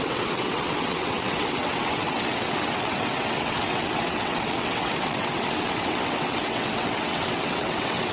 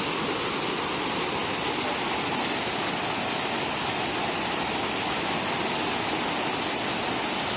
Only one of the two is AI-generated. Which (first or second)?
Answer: first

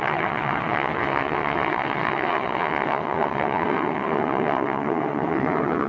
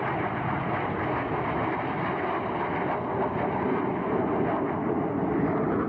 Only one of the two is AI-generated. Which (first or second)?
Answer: first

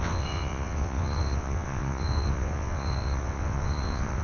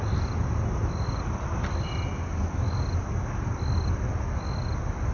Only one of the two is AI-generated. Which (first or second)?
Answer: first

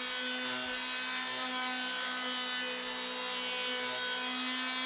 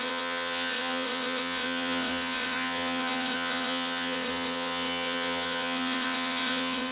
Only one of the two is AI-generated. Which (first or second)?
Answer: second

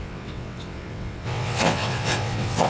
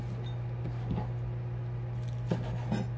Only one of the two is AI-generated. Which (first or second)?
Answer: first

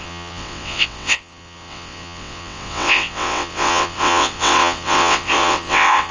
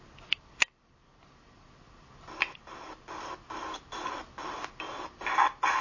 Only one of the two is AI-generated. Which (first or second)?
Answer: first